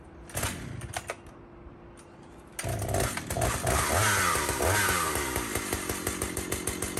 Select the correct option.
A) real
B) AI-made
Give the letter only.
A